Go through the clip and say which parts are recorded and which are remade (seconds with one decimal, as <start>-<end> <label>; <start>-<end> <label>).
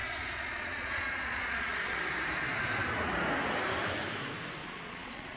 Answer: 0.0-2.0 remade; 2.0-4.6 recorded; 4.6-5.4 remade